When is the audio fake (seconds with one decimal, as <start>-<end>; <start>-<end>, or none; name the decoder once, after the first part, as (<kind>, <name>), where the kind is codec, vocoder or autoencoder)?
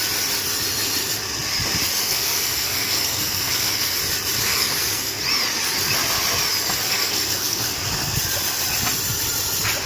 2.0-4.0 (codec, SNAC); 4.4-5.2; 6.9-8.2